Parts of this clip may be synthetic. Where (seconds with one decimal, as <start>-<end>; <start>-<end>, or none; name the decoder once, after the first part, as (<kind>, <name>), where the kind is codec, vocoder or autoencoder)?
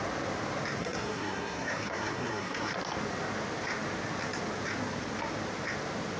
0.8-2.7 (codec, SNAC)